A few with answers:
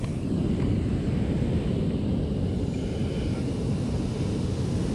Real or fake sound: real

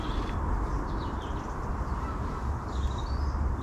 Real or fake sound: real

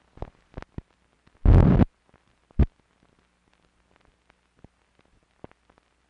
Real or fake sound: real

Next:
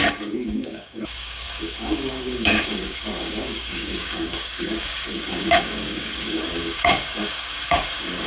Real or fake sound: fake